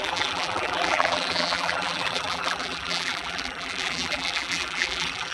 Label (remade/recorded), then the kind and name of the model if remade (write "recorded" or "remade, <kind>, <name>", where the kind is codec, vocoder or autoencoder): remade, vocoder, BigVGAN v2